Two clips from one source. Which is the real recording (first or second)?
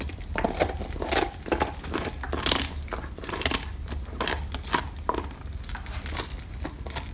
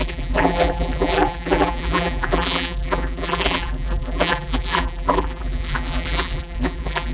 first